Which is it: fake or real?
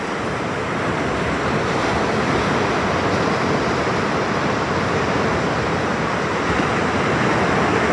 real